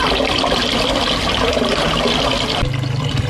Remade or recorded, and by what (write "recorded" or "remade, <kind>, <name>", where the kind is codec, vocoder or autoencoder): recorded